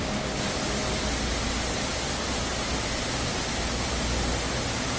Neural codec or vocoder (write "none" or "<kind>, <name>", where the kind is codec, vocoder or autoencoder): none